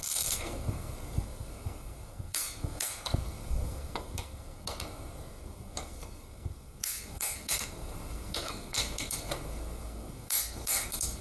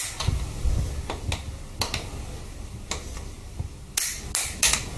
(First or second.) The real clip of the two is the second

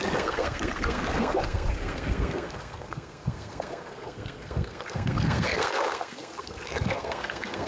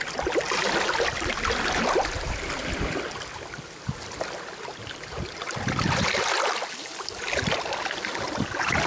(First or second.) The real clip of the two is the second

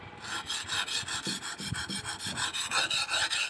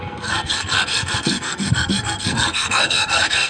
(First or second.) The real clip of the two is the first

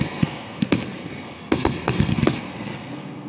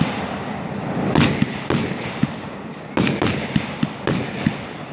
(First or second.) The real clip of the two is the second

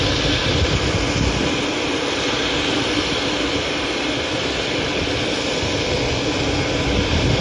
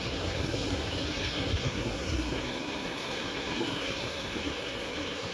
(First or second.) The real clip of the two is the first